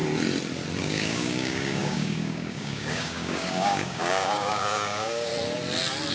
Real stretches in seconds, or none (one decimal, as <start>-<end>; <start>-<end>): 0.0-0.8; 5.3-6.1